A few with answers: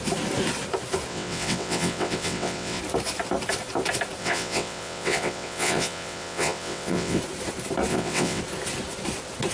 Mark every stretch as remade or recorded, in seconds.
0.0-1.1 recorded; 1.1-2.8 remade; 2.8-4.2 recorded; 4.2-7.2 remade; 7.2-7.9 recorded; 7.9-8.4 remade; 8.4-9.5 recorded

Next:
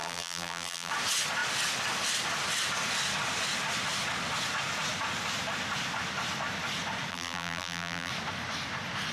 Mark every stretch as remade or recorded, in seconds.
0.0-0.9 remade; 0.9-7.1 recorded; 7.1-8.1 remade; 8.1-9.1 recorded